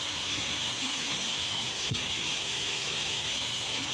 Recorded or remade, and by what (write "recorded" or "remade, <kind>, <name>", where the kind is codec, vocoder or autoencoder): remade, codec, SNAC